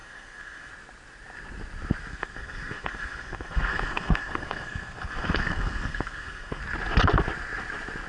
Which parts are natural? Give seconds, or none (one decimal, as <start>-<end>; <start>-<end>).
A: 0.7-2.1; 6.6-8.1